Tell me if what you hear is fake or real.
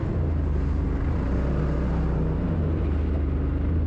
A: real